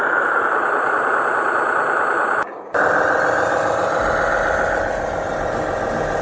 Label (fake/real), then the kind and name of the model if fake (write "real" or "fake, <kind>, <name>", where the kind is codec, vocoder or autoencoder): real